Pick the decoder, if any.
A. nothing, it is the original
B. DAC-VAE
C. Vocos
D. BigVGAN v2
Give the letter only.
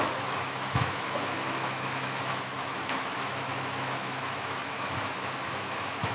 B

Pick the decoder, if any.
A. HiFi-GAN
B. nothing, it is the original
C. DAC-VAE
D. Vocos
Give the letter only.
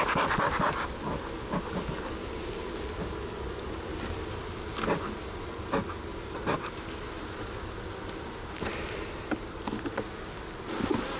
B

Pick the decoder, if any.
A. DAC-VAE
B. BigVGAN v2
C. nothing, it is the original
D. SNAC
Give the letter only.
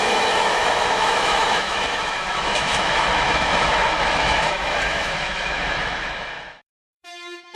A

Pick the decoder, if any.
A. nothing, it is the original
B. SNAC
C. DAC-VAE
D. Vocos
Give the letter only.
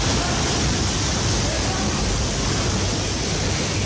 A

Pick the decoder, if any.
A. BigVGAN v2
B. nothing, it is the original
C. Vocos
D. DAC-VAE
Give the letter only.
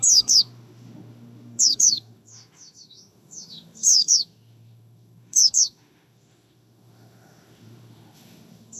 D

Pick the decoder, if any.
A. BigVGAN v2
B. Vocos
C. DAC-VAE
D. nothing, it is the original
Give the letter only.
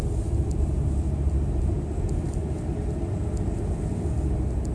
D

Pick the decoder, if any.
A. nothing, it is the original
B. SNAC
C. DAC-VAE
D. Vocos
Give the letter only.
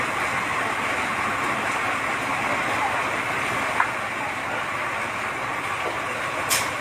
A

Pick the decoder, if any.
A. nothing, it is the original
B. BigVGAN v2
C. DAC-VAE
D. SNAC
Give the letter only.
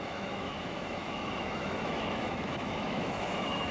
C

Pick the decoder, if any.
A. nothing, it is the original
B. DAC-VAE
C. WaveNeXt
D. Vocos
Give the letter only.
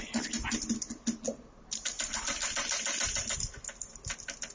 A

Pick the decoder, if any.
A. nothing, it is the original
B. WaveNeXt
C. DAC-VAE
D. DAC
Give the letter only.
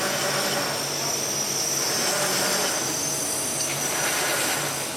A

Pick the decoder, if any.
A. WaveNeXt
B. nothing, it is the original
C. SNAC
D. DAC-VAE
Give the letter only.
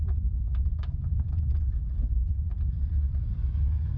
B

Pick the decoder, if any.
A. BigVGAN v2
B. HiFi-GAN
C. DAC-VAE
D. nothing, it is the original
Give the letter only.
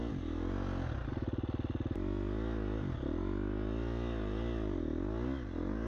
D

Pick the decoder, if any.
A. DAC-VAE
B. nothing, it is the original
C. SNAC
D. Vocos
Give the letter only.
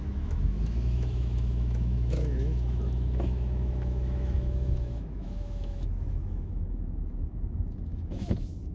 A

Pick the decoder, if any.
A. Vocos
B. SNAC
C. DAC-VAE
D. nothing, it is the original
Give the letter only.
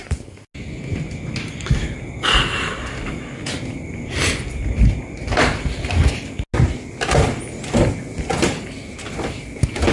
D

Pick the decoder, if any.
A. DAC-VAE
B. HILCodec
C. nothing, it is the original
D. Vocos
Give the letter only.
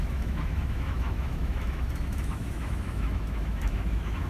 A